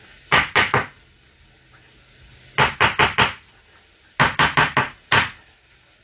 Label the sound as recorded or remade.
recorded